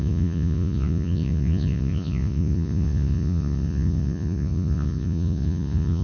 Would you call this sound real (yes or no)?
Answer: no